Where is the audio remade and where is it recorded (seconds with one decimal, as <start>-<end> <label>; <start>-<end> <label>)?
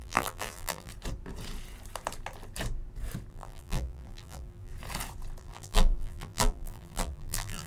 0.0-0.9 remade; 0.9-3.3 recorded; 3.3-4.7 remade; 4.7-5.4 recorded; 5.4-7.7 remade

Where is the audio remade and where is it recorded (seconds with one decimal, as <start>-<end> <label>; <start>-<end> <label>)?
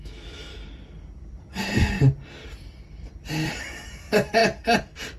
0.0-0.5 remade; 0.5-3.6 recorded; 3.6-4.4 remade; 4.4-5.2 recorded